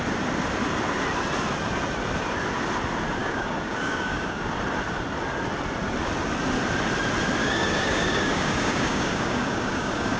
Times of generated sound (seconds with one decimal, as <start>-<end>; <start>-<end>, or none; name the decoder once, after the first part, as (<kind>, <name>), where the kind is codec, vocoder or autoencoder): 3.2-4.5 (codec, DAC); 7.4-10.2